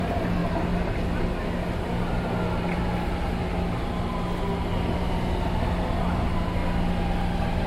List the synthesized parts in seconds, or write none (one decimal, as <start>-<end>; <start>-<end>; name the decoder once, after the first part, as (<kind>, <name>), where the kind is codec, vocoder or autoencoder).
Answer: none

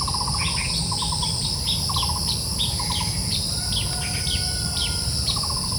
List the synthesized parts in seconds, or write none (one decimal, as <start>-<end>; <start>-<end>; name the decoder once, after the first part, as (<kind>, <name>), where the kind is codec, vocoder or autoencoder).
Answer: 4.8-5.8 (vocoder, BigVGAN v2)

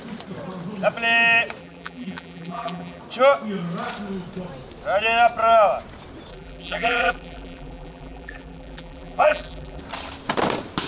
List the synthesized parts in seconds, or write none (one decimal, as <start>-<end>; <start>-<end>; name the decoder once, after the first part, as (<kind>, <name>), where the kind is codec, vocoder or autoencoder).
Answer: 1.6-3.0 (vocoder, BigVGAN v2); 6.3-9.8

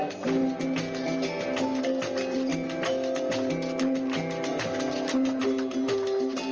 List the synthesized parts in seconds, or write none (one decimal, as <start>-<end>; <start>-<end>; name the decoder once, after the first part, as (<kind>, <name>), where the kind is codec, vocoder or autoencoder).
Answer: none

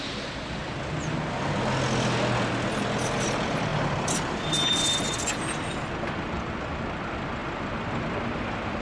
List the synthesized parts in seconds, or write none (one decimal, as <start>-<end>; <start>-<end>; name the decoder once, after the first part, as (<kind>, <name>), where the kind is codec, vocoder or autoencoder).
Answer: 3.7-5.3 (vocoder, BigVGAN v2)

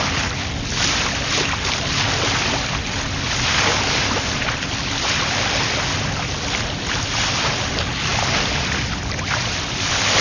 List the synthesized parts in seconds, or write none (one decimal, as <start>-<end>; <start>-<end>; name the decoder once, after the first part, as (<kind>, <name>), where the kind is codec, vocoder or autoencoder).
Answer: none

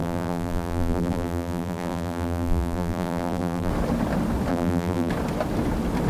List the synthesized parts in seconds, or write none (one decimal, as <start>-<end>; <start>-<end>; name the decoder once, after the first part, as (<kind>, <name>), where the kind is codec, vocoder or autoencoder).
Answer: 0.0-3.7 (vocoder, BigVGAN v2); 4.5-5.1